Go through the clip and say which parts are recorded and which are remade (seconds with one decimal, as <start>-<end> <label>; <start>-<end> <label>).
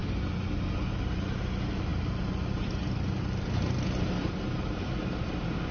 0.0-5.7 recorded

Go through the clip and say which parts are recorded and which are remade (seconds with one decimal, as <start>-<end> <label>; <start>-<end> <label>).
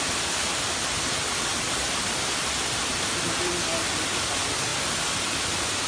0.0-5.9 recorded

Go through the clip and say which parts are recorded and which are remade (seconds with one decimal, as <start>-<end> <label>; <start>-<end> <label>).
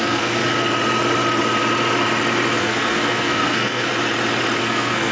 0.0-0.4 remade; 0.4-2.6 recorded; 2.6-3.9 remade; 3.9-4.6 recorded; 4.6-5.1 remade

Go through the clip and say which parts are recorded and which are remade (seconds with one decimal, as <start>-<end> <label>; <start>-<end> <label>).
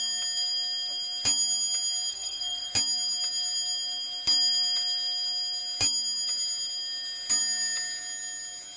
0.0-2.1 recorded; 2.1-2.7 remade; 2.7-8.8 recorded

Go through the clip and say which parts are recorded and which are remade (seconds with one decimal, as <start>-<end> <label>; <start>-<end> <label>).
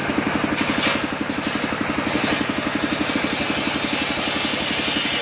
0.0-5.2 recorded